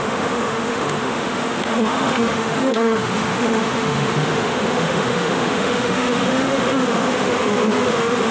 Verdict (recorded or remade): remade